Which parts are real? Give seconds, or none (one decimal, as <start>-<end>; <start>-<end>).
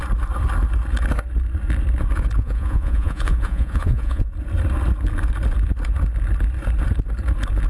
0.0-2.4; 4.3-7.7